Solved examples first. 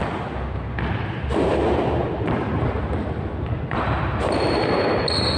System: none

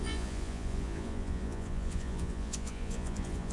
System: vocoder, Vocos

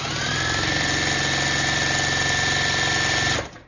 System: none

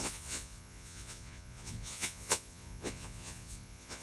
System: vocoder, Vocos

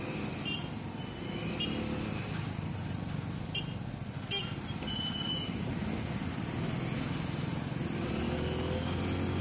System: none